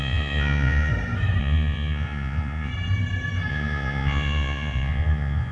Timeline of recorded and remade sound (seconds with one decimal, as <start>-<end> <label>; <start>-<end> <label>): 0.0-0.9 remade; 0.9-1.4 recorded; 1.4-2.7 remade; 2.7-3.5 recorded; 3.5-5.5 remade